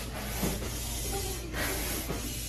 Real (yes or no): yes